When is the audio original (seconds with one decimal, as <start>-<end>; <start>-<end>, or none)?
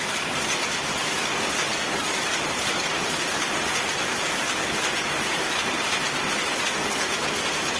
0.0-7.8